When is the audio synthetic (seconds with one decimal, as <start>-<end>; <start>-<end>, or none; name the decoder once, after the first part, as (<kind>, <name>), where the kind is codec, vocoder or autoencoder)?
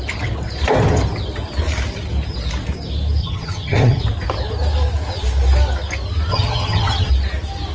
3.2-4.0 (vocoder, HiFi-GAN); 6.3-7.1